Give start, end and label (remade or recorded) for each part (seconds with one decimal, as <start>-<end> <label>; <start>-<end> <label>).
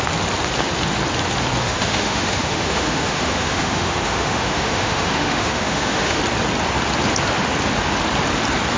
0.0-1.6 recorded; 1.6-6.2 remade; 6.2-8.8 recorded